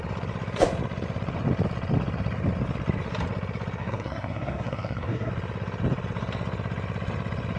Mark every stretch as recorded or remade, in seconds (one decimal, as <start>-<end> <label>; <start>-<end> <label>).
0.0-3.8 recorded; 3.8-5.3 remade; 5.3-7.6 recorded